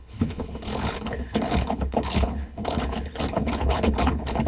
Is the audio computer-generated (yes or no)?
yes